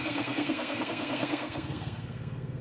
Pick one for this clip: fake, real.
fake